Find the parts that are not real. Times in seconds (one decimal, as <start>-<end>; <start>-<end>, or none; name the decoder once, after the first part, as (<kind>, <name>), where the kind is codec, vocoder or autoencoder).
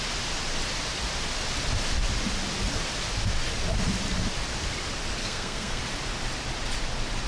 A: 5.2-5.8 (codec, SNAC)